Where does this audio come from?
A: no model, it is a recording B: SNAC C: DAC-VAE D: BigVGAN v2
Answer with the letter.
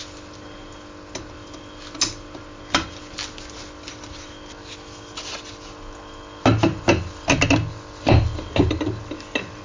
A